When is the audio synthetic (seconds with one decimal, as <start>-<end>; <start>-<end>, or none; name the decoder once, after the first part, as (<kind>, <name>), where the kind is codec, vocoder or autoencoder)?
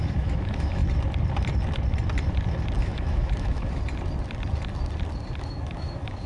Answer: 0.0-0.8 (autoencoder, DAC-VAE); 2.8-3.8; 5.4-6.3